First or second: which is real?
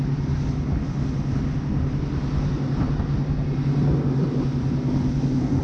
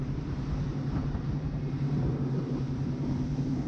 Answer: first